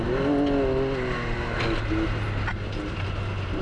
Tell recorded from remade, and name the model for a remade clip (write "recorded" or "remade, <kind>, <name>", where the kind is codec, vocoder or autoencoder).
recorded